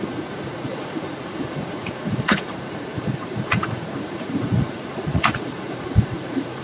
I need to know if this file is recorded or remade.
remade